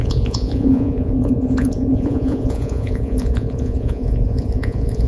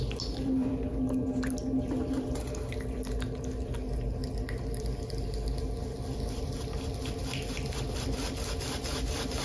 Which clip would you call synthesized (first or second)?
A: first